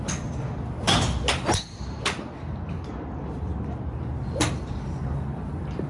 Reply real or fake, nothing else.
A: real